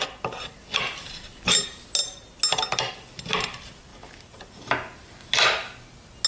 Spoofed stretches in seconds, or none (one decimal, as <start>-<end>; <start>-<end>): none